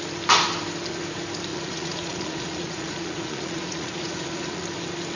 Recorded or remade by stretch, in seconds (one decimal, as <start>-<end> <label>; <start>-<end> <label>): 0.0-1.5 recorded; 1.5-4.6 remade; 4.6-5.2 recorded